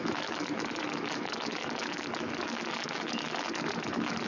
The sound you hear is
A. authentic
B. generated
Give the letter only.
B